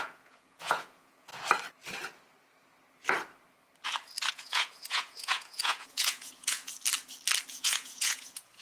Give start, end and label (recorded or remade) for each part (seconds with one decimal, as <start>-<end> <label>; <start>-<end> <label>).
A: 0.0-1.3 remade; 1.3-4.3 recorded; 4.3-6.7 remade; 6.7-7.5 recorded; 7.5-8.6 remade